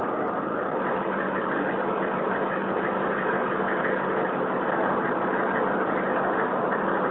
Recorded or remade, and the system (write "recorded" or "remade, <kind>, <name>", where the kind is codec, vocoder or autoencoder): recorded